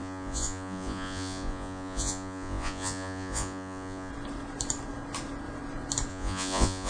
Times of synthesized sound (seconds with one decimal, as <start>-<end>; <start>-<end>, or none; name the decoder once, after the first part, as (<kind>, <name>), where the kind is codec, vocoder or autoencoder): 0.0-4.1 (vocoder, Vocos); 6.1-6.9

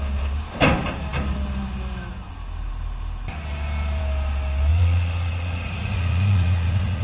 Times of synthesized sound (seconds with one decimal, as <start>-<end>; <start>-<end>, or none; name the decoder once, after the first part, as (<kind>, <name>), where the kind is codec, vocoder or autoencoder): 4.7-7.0 (vocoder, Vocos)

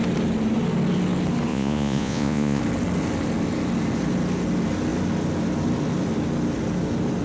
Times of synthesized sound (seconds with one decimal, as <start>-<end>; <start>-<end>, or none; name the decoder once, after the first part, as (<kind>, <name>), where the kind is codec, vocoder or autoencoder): 1.5-2.6 (vocoder, Vocos)

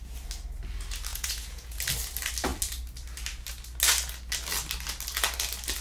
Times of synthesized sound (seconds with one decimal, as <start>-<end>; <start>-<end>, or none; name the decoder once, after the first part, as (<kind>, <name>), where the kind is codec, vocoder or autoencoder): 1.1-1.8 (vocoder, Vocos)

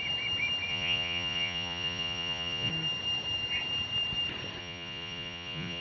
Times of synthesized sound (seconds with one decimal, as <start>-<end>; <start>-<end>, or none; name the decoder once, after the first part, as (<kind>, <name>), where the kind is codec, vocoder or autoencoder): 0.7-2.7 (vocoder, Vocos); 4.6-5.8